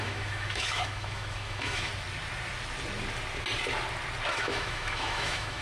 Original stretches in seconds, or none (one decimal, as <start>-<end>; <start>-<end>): 1.9-4.3